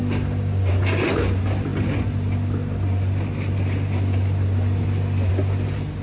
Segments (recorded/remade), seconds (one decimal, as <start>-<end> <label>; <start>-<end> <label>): 0.0-0.7 remade; 0.7-6.0 recorded